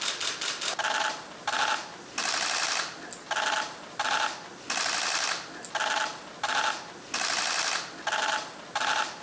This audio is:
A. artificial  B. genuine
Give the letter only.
B